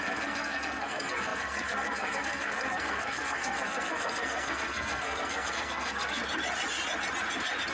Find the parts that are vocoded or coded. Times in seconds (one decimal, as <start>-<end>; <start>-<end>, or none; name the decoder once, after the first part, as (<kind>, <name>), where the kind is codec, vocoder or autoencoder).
0.0-6.2 (codec, SNAC)